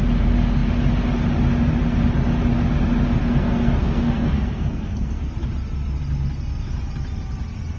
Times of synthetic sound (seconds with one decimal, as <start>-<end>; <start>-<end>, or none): 3.2-5.3